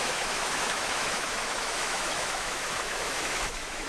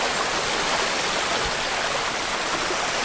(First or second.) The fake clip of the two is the first